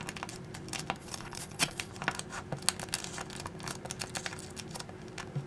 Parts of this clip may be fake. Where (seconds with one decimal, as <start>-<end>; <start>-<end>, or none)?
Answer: 1.0-1.9